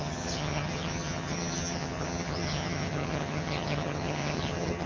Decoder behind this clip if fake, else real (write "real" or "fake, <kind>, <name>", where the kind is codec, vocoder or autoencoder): fake, vocoder, HiFi-GAN